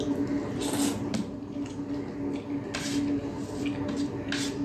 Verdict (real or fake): real